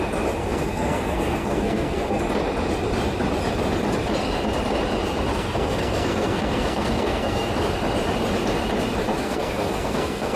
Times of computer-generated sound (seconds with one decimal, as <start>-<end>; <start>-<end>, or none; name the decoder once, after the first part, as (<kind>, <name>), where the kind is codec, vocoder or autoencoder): 0.4-2.2 (codec, SNAC); 5.3-7.5; 9.2-10.4